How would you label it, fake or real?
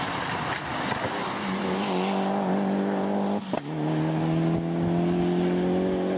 real